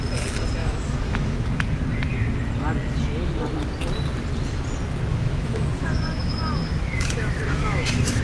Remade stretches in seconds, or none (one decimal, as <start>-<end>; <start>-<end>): 0.6-1.5; 5.1-8.2